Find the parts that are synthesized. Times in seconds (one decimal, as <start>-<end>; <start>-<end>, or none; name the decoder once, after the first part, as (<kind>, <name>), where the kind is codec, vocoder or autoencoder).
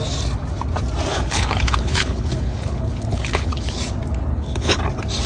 1.1-3.8 (codec, HILCodec); 4.3-4.8